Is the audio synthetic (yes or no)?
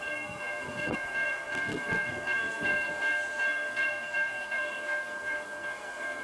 yes